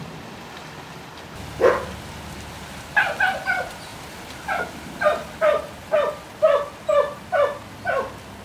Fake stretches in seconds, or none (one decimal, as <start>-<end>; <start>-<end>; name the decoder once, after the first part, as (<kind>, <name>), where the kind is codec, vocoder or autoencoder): none